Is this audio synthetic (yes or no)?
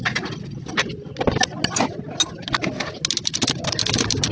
no